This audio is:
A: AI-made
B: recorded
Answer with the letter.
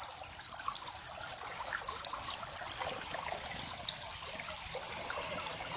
B